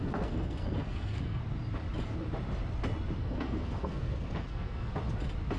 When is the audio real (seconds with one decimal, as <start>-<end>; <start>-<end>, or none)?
1.4-3.2; 4.9-5.6